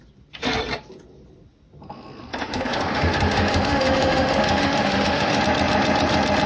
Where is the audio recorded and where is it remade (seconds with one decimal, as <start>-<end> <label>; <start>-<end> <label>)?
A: 0.0-2.3 recorded; 2.3-5.4 remade; 5.4-6.5 recorded